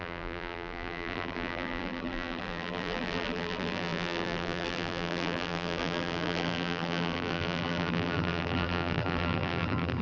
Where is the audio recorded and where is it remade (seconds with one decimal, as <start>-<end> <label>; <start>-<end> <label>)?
0.0-10.0 remade